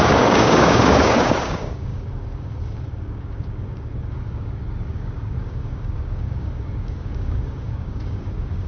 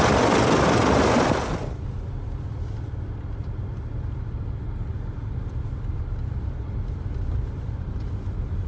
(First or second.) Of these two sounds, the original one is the second